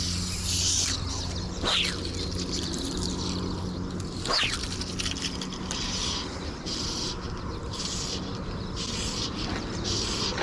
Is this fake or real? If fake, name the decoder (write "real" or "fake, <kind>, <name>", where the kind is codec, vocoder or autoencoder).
real